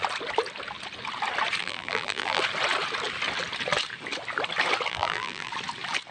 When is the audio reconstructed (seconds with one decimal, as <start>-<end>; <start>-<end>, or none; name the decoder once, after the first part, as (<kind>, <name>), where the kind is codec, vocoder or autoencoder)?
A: 1.6-2.4 (vocoder, BigVGAN v2); 4.9-5.5